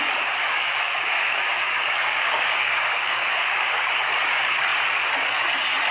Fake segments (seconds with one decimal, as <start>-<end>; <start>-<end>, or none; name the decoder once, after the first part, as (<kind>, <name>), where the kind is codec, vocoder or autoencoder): 0.4-3.9 (codec, DAC)